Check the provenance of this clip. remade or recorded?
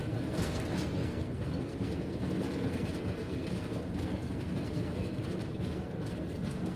remade